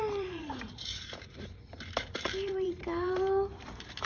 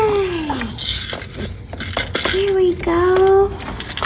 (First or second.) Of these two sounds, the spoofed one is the first